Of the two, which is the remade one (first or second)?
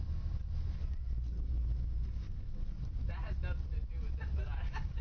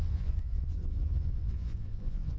second